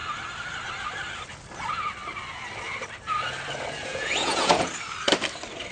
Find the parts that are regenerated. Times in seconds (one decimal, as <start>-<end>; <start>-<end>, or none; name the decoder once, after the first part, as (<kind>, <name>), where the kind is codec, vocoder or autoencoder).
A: 3.9-4.7 (vocoder, Vocos)